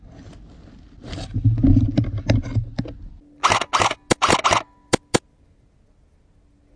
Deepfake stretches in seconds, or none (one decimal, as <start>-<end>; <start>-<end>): none